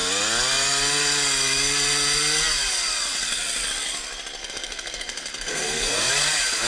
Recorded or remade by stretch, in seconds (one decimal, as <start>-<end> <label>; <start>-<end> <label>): 0.0-4.4 recorded; 4.4-6.1 remade; 6.1-6.7 recorded